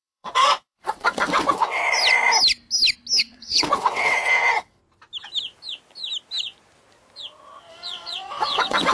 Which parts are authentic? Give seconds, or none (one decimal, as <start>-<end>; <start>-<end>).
1.8-3.2; 4.8-7.7